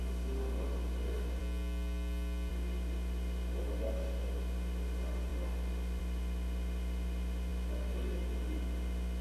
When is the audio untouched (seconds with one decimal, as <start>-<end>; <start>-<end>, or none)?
1.4-2.5

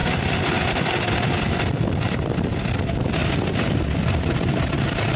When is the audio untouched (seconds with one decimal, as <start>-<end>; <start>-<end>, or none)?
0.0-5.2